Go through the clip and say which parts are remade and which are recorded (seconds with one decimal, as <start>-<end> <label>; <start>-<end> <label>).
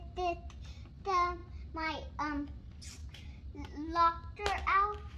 0.0-1.4 recorded; 1.4-2.1 remade; 2.1-5.2 recorded